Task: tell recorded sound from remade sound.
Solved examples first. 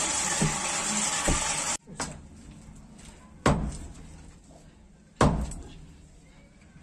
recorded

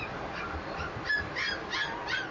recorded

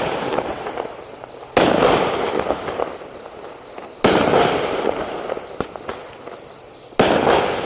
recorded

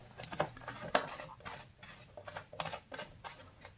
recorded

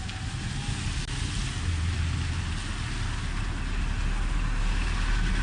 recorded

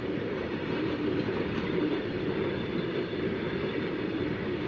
remade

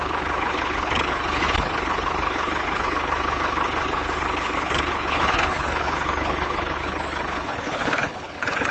remade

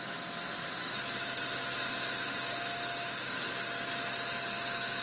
recorded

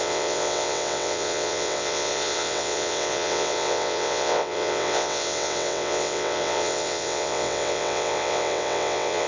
remade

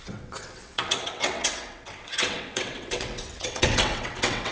remade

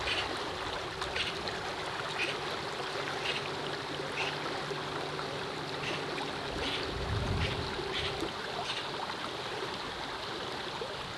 recorded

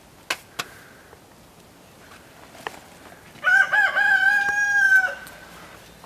recorded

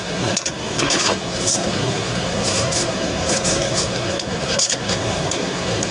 remade